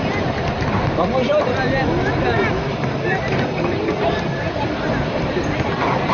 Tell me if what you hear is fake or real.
fake